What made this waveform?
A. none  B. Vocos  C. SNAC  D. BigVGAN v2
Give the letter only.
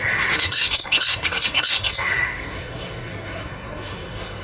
C